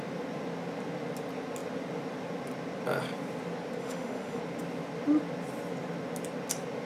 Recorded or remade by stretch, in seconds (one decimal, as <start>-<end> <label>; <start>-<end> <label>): 0.0-3.8 recorded; 3.8-4.4 remade; 4.4-6.9 recorded